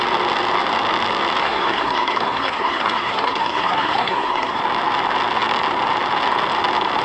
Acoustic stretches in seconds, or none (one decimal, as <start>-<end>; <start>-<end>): 0.0-1.4; 4.6-7.0